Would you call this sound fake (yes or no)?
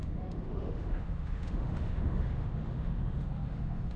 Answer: yes